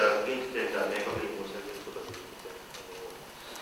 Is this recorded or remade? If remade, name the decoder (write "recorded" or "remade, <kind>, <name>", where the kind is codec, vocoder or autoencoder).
recorded